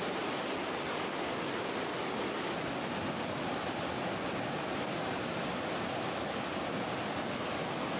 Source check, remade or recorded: recorded